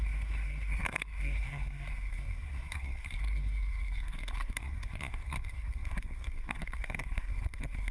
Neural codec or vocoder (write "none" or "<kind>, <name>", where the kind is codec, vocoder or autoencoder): codec, SNAC